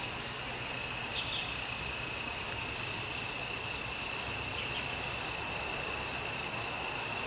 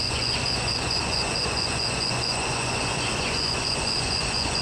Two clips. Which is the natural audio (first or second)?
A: first